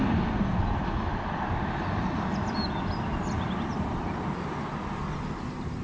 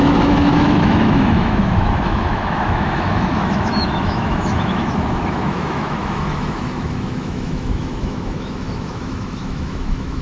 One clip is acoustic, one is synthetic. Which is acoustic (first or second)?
first